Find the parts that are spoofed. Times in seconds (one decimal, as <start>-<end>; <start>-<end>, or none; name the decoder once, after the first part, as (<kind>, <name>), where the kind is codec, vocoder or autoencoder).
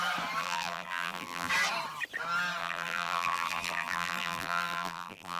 0.4-1.5 (vocoder, BigVGAN v2); 2.6-5.4